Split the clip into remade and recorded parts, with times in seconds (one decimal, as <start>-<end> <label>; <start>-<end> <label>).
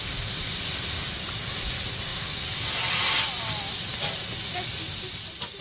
0.0-5.6 recorded